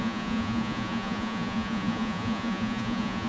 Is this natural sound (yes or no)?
no